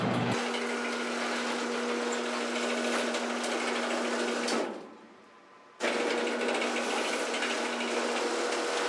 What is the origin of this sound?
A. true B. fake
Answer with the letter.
A